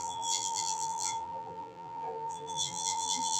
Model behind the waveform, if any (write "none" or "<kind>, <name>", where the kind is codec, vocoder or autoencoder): vocoder, BigVGAN v2